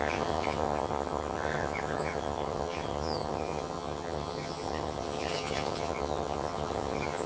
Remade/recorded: remade